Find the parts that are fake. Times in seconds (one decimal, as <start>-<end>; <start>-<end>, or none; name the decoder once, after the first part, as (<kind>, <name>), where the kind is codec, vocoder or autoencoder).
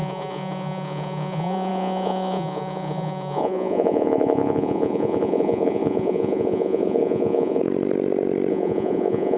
0.0-7.6 (vocoder, Vocos); 8.5-9.4